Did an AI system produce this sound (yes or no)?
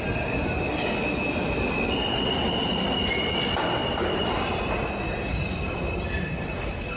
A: no